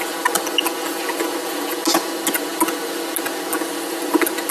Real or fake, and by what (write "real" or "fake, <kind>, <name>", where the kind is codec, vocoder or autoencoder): real